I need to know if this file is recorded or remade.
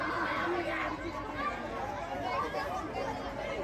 recorded